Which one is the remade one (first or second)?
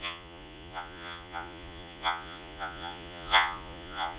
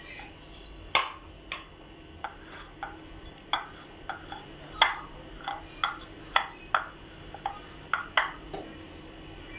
first